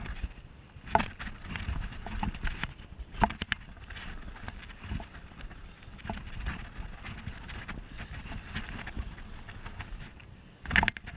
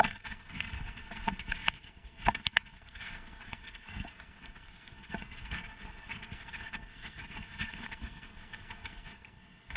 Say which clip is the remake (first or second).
second